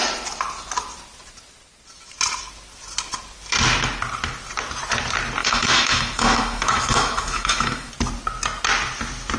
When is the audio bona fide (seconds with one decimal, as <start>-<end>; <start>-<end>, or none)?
0.0-5.4; 7.9-9.4

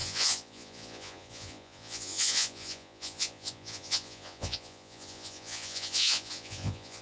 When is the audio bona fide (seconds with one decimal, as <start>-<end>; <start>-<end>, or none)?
none

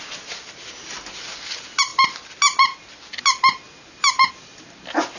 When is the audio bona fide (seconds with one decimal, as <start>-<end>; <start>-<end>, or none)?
0.0-5.2

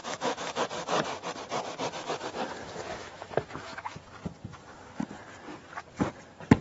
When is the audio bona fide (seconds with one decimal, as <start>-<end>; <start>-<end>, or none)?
0.6-3.0; 4.0-6.6

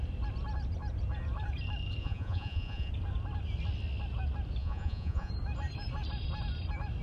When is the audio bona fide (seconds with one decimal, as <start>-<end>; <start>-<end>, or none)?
0.0-2.0; 2.9-4.6; 5.3-7.0

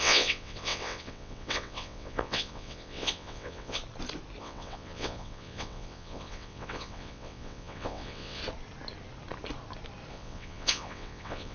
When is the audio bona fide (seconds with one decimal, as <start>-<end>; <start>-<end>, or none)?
3.8-4.4; 8.4-10.1

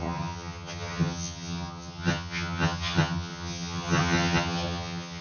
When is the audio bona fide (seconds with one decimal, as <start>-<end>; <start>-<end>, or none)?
none

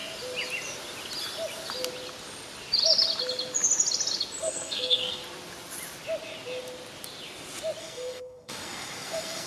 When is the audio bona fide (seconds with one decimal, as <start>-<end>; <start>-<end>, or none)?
0.0-4.4; 5.2-7.8